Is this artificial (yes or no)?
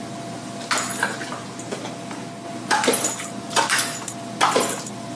no